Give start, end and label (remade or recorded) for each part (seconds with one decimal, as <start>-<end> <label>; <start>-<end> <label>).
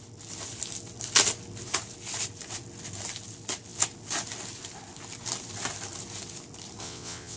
0.0-6.8 recorded; 6.8-7.4 remade